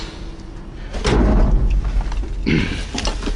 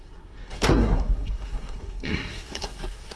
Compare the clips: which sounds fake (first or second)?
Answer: second